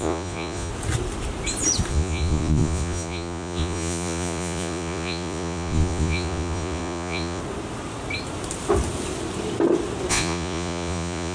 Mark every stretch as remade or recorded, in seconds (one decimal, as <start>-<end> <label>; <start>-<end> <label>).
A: 0.0-0.7 remade; 0.7-1.9 recorded; 1.9-7.4 remade; 7.4-10.1 recorded; 10.1-11.3 remade